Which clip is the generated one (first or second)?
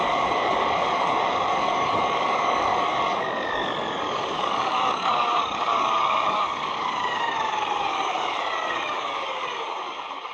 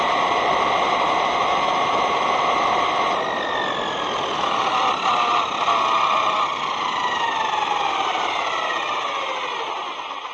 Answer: first